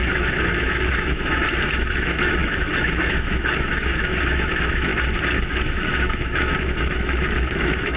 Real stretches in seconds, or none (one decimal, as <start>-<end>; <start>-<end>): 4.9-5.5